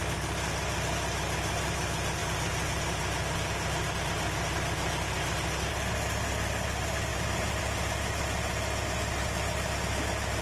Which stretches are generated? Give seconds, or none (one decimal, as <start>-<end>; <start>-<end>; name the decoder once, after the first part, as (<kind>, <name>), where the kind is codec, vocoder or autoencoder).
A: 7.1-7.6 (vocoder, BigVGAN v2)